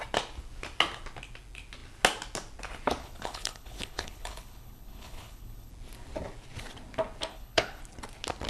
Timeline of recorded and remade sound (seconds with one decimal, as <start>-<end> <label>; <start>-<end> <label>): 0.0-3.0 recorded; 3.0-5.7 remade; 5.7-7.3 recorded; 7.3-7.8 remade; 7.8-8.5 recorded